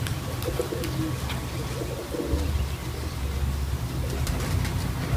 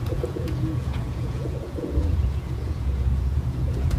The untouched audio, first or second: first